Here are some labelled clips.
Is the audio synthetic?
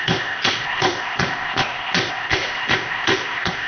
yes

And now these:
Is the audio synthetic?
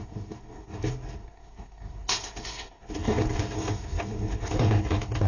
yes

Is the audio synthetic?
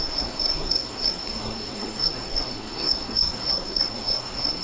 yes